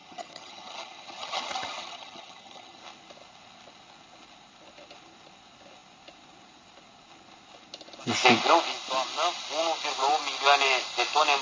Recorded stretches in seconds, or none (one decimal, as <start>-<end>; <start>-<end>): 2.8-11.4